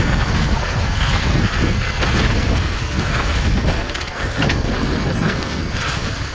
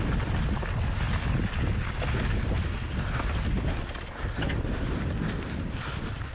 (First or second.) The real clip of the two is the second